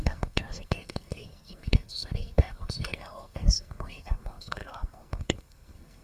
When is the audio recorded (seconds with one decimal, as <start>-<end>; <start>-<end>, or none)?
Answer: none